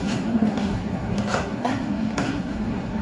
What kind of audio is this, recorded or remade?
remade